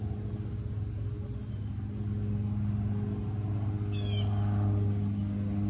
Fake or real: real